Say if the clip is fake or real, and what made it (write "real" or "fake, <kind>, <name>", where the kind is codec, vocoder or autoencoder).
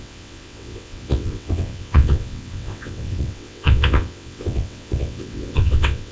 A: fake, vocoder, WaveNeXt